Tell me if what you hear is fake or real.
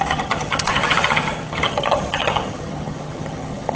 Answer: fake